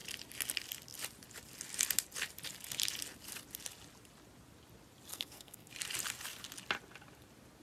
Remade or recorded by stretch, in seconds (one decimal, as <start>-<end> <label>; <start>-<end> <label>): 0.0-5.1 recorded; 5.1-5.7 remade; 5.7-7.6 recorded